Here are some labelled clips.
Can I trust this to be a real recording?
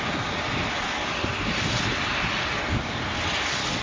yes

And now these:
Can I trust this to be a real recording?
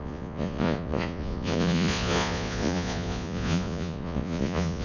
no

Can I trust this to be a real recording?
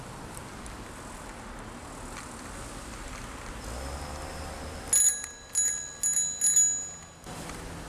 yes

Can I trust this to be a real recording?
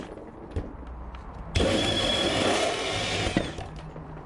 yes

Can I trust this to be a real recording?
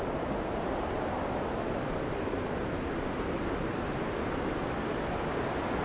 yes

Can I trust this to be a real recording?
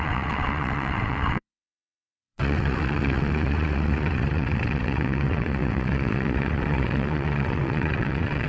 no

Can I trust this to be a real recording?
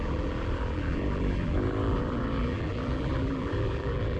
no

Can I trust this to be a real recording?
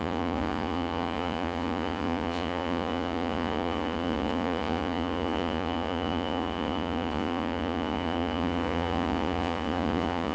no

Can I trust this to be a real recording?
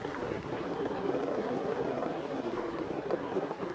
no